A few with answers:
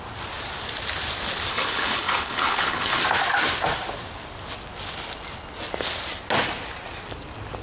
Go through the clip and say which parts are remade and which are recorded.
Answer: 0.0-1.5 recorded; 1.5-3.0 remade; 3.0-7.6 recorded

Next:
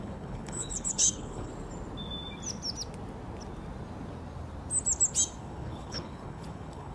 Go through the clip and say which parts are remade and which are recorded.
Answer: 0.0-1.5 remade; 1.5-5.4 recorded; 5.4-6.9 remade